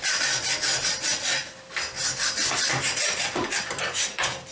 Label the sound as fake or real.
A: real